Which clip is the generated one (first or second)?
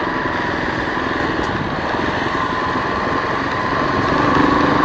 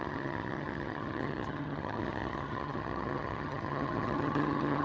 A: second